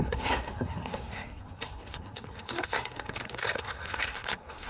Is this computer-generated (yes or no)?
yes